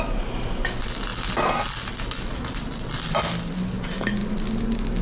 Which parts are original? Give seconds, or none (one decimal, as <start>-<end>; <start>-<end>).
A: 0.0-5.0